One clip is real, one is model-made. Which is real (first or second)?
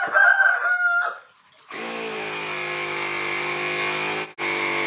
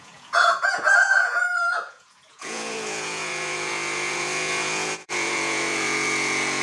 first